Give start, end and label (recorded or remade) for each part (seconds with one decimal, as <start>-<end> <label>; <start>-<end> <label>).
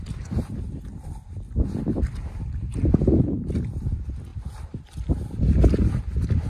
0.0-6.5 recorded